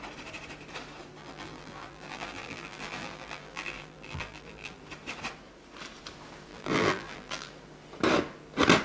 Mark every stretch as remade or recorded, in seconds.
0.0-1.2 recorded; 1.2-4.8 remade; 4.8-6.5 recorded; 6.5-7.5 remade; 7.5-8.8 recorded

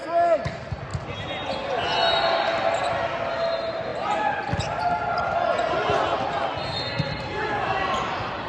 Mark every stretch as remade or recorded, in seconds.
0.0-8.5 recorded

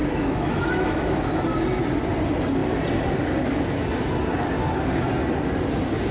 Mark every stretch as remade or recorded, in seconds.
0.0-1.4 remade; 1.4-6.1 recorded